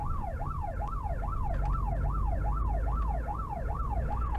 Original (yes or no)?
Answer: yes